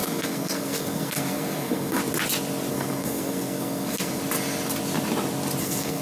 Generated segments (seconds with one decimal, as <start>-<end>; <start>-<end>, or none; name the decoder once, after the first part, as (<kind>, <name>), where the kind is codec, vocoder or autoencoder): 0.0-2.0 (codec, SNAC); 2.7-4.2; 5.6-6.0